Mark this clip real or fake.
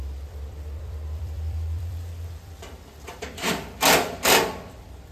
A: fake